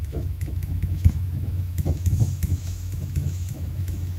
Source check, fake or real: fake